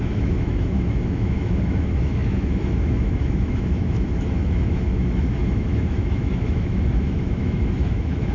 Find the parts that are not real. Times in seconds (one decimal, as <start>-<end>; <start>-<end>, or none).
0.0-8.3